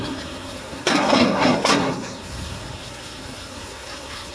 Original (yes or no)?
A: no